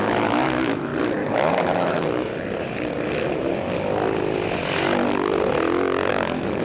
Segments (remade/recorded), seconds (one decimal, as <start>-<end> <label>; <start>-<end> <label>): 0.0-0.9 remade; 0.9-1.5 recorded; 1.5-2.3 remade; 2.3-6.1 recorded; 6.1-6.6 remade